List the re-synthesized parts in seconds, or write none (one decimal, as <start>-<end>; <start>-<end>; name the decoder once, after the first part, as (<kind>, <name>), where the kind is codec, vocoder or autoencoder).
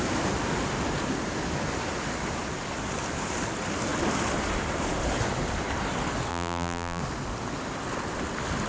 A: 6.3-7.0 (vocoder, BigVGAN v2)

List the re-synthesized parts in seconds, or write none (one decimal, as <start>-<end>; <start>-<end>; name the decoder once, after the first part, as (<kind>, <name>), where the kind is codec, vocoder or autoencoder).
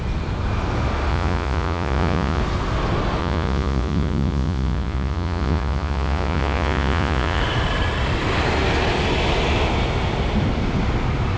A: 1.1-2.4 (vocoder, Vocos); 3.2-7.4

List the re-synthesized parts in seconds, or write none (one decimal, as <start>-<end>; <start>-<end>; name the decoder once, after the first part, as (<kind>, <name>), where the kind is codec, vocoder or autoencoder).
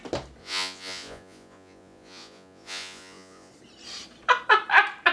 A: 0.4-3.5 (vocoder, Vocos)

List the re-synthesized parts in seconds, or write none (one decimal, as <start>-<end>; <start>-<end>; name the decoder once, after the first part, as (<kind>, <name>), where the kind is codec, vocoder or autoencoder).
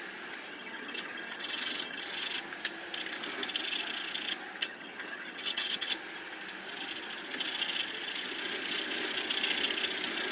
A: 0.5-2.1 (vocoder, HiFi-GAN); 4.6-5.9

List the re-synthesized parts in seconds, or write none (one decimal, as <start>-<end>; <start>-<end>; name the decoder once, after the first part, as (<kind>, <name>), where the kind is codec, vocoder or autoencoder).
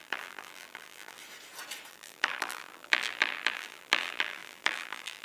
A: 0.0-1.2 (vocoder, BigVGAN v2); 1.9-5.2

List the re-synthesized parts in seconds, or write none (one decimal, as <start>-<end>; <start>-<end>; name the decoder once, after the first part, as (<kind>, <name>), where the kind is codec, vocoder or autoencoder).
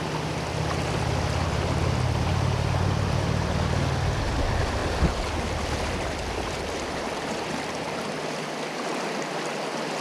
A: none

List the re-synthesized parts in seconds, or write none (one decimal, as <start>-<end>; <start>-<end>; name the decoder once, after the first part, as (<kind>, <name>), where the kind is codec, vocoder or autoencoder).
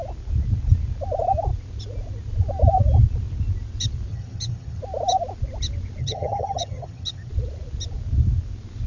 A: 4.1-4.8 (vocoder, HiFi-GAN); 6.0-7.3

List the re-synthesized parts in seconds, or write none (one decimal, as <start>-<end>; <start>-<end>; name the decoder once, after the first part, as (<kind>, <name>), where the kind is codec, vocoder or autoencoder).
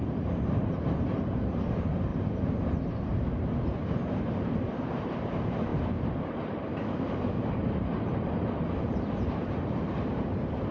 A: 0.0-10.7 (vocoder, BigVGAN v2)